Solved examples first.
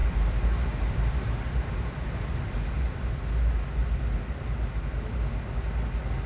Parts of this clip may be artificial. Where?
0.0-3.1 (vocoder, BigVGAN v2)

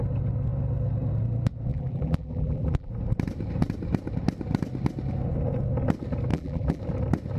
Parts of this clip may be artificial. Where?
1.7-2.9 (vocoder, BigVGAN v2); 6.3-6.8

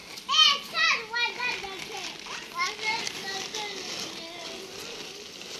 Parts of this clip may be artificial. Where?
none

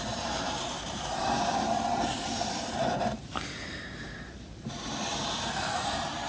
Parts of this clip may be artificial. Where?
0.0-3.3 (vocoder, BigVGAN v2); 4.3-6.3

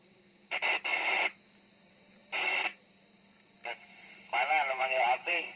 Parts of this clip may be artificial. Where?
0.0-0.9 (vocoder, BigVGAN v2); 1.9-5.6

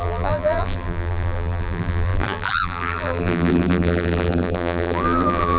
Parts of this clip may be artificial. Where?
0.0-5.6 (vocoder, BigVGAN v2)

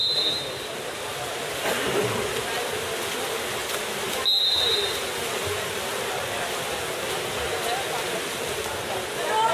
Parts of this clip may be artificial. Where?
none